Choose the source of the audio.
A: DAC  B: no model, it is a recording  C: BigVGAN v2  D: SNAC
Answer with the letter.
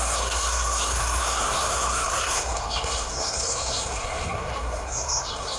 D